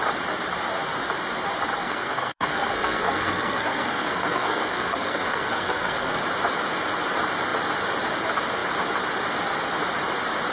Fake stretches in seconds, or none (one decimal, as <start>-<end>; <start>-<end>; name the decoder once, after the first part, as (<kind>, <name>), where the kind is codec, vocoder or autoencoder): 1.8-6.2 (codec, SNAC)

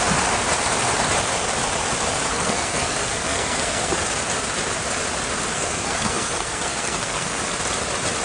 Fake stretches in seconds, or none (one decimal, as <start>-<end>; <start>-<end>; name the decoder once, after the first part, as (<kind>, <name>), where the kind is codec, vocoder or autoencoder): 2.3-4.0 (codec, SNAC); 5.5-7.4

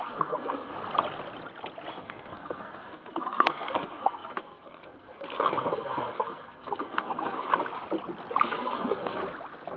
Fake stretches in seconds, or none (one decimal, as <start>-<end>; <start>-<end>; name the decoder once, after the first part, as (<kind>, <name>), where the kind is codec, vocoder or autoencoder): 0.0-0.7 (codec, SNAC); 2.0-7.5; 8.4-9.2

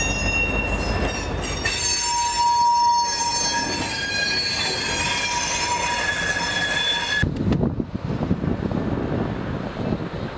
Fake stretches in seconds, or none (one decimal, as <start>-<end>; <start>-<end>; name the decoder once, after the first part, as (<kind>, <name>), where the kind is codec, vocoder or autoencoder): none

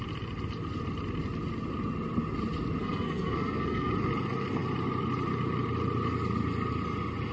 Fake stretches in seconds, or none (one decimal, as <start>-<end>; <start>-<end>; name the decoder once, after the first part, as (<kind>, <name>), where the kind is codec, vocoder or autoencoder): 2.8-3.9 (codec, SNAC)

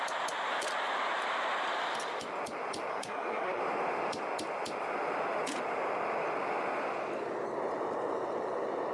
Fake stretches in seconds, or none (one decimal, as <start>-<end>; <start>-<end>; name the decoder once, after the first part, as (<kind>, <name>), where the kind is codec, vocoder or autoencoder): 2.9-3.6 (codec, SNAC)

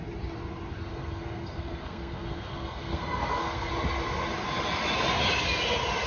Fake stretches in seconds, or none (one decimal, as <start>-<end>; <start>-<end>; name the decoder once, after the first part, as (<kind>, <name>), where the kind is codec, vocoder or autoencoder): 0.9-3.7 (codec, SNAC)

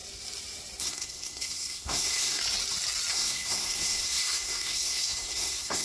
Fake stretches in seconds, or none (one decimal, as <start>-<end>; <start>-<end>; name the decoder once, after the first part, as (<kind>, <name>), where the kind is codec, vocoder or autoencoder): 0.8-2.4 (codec, SNAC); 3.1-5.8